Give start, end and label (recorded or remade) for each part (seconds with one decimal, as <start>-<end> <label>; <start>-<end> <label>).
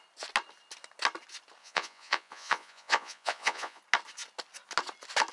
0.0-1.6 recorded; 1.6-3.8 remade; 3.8-5.3 recorded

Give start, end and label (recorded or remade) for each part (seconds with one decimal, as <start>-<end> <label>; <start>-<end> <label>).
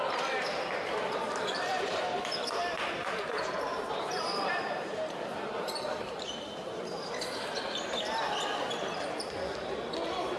0.0-1.0 recorded; 1.0-2.2 remade; 2.2-2.6 recorded; 2.6-7.2 remade; 7.2-10.4 recorded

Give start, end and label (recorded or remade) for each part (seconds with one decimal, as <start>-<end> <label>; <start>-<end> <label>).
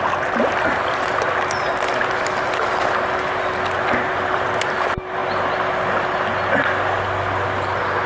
0.0-8.1 recorded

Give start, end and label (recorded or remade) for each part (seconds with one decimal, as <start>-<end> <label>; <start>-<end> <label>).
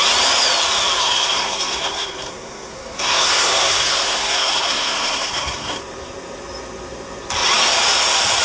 0.0-1.0 recorded; 1.0-5.8 remade; 5.8-8.4 recorded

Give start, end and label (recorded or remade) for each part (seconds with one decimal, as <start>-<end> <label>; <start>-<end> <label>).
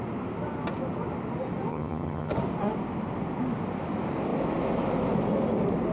0.0-1.7 recorded; 1.7-2.3 remade; 2.3-5.9 recorded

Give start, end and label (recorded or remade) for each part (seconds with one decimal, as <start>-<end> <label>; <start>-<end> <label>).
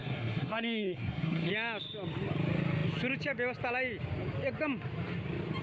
0.0-1.5 remade; 1.5-5.6 recorded